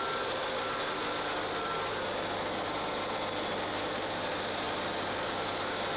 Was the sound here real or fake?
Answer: real